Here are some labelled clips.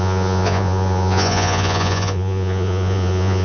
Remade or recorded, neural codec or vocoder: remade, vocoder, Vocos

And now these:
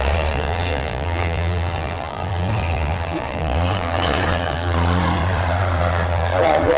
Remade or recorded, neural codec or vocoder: remade, vocoder, Vocos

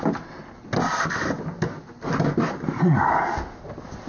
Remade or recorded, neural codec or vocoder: recorded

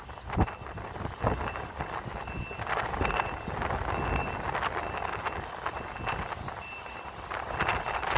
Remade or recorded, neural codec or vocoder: recorded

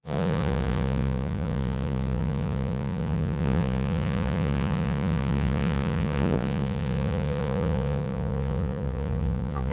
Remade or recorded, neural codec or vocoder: remade, vocoder, Vocos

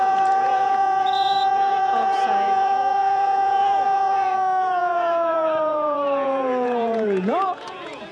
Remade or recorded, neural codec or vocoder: remade, vocoder, Vocos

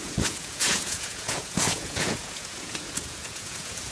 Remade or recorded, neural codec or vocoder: remade, vocoder, Vocos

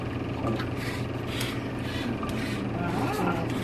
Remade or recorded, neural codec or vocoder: recorded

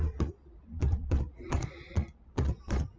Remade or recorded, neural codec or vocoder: remade, vocoder, Vocos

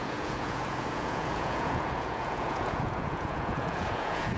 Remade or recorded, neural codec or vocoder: remade, vocoder, Vocos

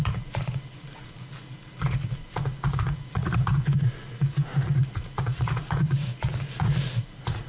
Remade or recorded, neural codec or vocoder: remade, vocoder, Vocos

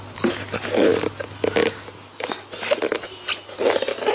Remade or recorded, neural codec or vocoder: recorded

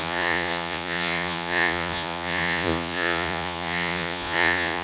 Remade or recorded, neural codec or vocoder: remade, vocoder, Vocos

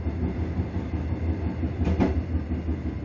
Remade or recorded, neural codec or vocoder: recorded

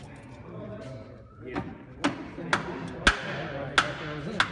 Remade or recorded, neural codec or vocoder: recorded